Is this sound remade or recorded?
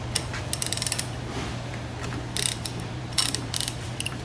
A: remade